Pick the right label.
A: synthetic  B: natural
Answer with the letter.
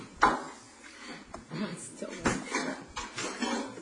B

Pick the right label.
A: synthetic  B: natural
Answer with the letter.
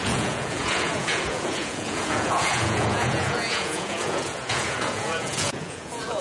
A